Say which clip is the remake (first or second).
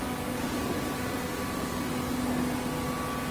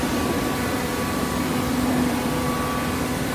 second